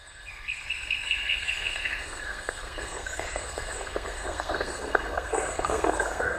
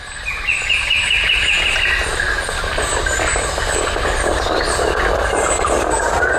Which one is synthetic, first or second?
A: first